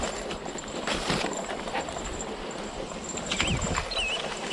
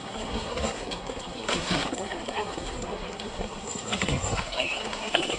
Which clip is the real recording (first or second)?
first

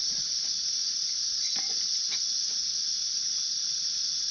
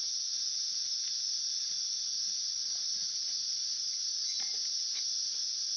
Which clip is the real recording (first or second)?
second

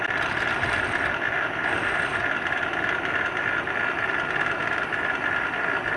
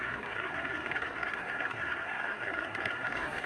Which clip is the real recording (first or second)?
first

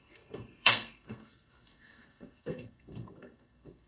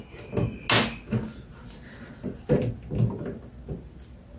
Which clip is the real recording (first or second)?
second